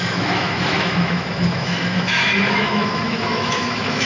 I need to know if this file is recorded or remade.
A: remade